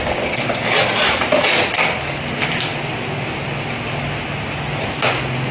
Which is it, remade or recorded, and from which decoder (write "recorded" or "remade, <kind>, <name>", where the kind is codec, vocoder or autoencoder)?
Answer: recorded